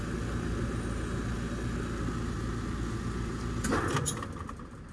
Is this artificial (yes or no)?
no